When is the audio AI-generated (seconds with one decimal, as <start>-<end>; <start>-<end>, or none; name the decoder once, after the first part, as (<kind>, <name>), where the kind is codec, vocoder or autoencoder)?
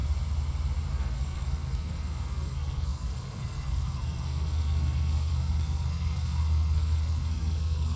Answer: 0.9-8.0 (codec, SNAC)